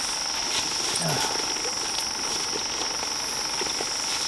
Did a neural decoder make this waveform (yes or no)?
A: no